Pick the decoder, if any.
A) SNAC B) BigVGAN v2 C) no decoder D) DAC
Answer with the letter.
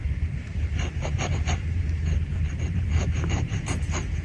B